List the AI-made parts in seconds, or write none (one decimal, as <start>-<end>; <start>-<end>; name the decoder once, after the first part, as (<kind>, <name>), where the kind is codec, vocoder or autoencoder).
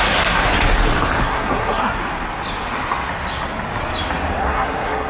0.0-0.5 (codec, SNAC); 1.2-2.0; 4.4-5.1